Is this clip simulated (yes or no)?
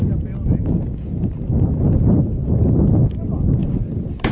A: no